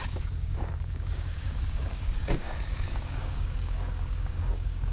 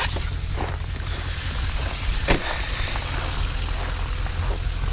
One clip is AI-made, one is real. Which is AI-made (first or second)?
first